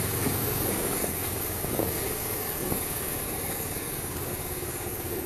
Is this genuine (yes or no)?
no